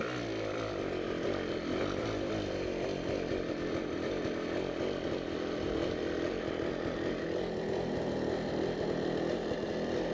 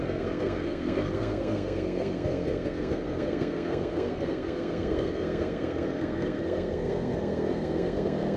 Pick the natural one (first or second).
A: first